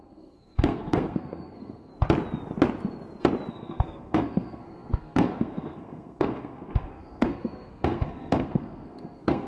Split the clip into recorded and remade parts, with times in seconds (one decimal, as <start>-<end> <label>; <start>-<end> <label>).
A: 0.0-1.9 remade; 1.9-3.5 recorded; 3.5-9.5 remade

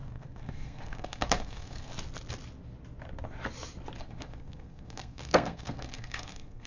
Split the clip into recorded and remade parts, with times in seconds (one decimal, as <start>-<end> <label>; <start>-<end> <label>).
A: 0.0-1.9 remade; 1.9-4.0 recorded; 4.0-6.7 remade

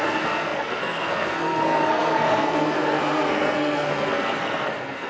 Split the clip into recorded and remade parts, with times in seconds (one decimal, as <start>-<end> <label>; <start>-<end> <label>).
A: 0.0-5.1 remade

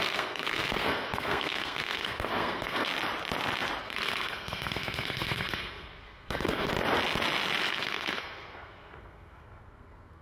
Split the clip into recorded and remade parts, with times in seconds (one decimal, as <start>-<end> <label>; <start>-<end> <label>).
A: 0.0-2.9 remade; 2.9-3.8 recorded; 3.8-6.7 remade; 6.7-7.6 recorded; 7.6-10.2 remade

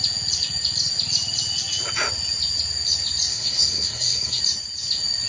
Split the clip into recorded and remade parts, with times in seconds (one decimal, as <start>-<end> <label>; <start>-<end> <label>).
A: 0.0-3.3 recorded; 3.3-4.4 remade; 4.4-5.3 recorded